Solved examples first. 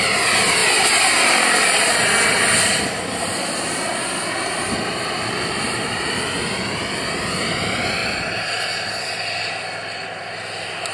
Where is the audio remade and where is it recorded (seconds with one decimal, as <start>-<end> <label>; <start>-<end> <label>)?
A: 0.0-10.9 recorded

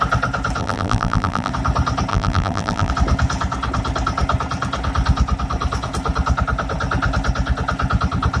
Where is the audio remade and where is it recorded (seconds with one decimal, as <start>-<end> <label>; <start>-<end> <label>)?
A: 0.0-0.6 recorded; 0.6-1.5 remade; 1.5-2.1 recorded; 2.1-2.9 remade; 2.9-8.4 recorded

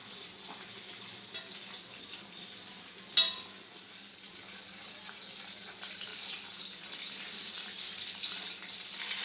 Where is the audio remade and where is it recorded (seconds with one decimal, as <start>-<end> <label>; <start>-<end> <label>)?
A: 0.0-4.1 recorded; 4.1-9.2 remade